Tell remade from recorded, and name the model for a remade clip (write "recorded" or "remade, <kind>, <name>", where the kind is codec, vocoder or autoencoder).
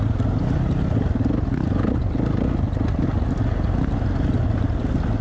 recorded